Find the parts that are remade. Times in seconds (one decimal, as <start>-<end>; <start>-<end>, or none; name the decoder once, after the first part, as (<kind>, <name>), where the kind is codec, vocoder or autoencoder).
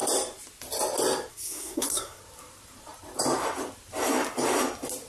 1.3-2.2 (codec, SNAC)